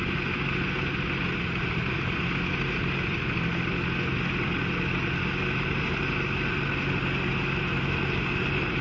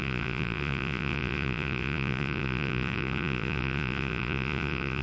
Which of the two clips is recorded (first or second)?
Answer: first